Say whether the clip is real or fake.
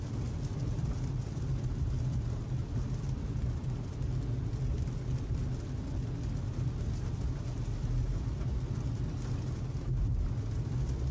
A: real